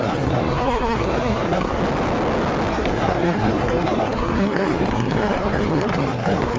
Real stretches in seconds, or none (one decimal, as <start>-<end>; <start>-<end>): 1.8-2.7